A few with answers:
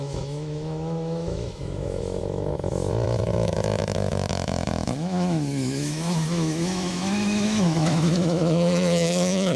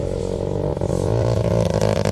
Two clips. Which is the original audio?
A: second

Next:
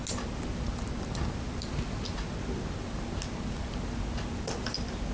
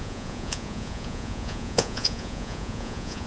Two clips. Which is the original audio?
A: first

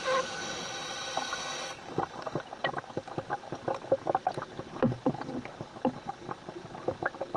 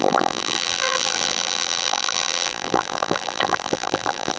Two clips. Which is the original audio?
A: first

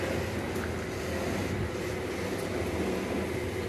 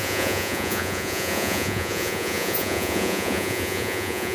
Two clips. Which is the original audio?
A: first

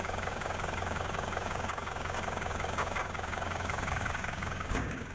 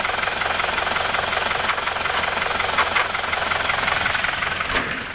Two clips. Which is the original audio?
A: second